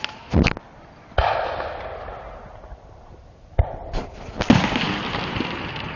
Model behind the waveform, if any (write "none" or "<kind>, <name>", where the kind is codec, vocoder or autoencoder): none